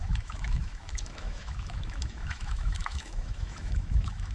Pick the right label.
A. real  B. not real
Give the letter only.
B